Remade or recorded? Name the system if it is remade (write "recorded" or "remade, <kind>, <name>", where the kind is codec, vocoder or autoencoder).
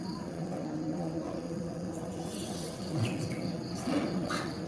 remade, vocoder, WaveNeXt